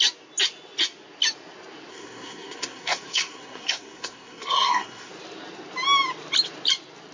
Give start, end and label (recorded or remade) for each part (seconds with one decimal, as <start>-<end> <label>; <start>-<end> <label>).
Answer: 0.0-1.9 recorded; 1.9-5.1 remade; 5.1-7.1 recorded